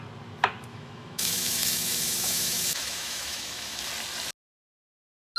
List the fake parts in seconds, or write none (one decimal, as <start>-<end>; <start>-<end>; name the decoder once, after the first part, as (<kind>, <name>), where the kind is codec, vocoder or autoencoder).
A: 0.7-3.9 (autoencoder, DAC-VAE)